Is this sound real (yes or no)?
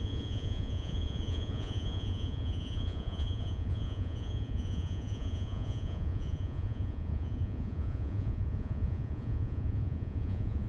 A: no